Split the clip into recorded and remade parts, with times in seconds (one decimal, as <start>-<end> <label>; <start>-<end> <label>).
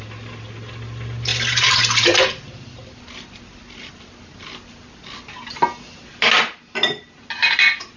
0.0-1.3 recorded; 1.3-5.0 remade; 5.0-8.0 recorded